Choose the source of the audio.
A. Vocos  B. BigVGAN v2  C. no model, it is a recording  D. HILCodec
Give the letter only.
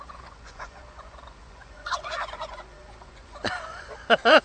A